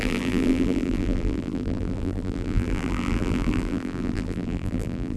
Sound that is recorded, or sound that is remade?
remade